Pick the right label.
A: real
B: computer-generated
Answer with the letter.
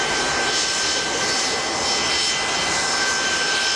A